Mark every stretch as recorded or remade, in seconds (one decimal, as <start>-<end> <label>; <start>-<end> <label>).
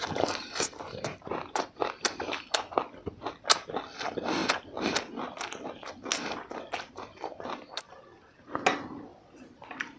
0.0-10.0 recorded